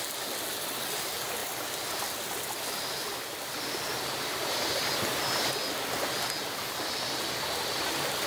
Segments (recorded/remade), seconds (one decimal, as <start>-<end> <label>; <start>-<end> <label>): 0.0-1.4 recorded; 1.4-5.2 remade; 5.2-8.3 recorded